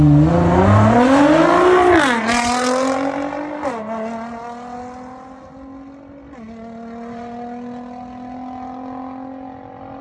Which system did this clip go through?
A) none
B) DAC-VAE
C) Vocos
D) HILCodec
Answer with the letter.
A